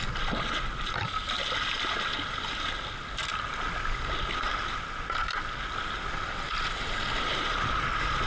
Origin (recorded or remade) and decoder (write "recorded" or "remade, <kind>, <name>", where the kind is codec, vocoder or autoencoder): recorded